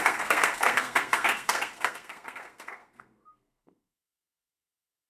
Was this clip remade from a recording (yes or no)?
yes